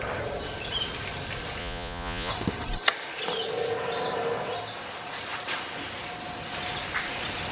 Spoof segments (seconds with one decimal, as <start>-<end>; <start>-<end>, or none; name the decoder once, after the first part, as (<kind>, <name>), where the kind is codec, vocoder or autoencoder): 1.6-2.3 (vocoder, Vocos)